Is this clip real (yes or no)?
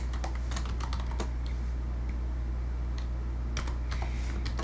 yes